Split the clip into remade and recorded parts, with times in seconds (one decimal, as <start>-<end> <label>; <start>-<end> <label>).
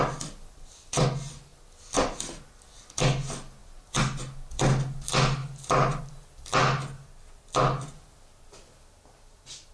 0.0-9.7 recorded